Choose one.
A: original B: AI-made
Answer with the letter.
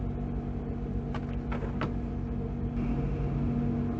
A